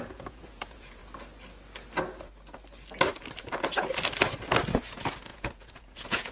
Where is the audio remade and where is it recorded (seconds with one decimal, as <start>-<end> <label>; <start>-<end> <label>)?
0.0-1.0 remade; 1.0-4.8 recorded; 4.8-6.3 remade